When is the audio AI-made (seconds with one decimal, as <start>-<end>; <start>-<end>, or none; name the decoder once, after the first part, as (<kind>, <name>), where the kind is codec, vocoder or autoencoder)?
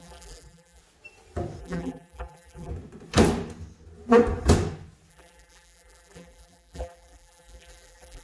0.0-0.8 (vocoder, BigVGAN v2); 1.6-2.7; 5.1-8.2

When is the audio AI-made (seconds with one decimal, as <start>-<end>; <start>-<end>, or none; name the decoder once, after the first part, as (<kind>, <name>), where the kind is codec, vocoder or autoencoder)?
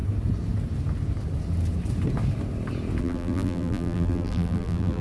3.0-5.0 (vocoder, BigVGAN v2)